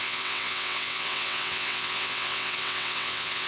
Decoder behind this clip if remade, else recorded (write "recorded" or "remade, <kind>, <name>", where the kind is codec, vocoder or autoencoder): remade, vocoder, WaveNeXt